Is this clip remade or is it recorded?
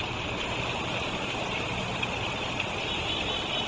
recorded